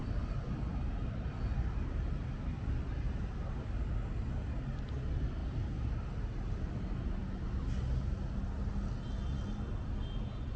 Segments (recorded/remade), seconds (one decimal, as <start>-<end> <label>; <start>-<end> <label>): 0.0-10.6 recorded